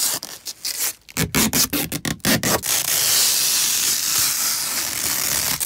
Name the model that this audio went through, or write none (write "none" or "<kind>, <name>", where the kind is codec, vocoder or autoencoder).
none